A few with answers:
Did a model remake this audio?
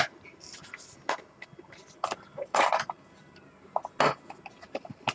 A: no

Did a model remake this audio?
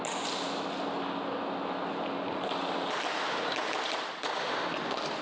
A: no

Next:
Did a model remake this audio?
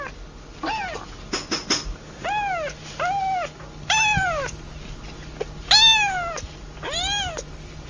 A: no